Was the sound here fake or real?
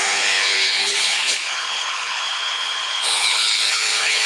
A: fake